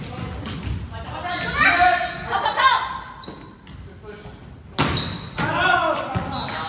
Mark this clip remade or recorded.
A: recorded